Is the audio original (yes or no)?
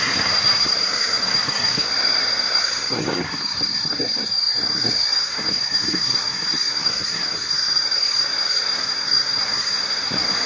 no